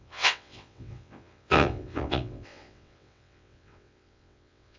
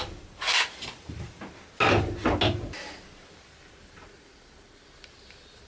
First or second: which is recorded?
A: second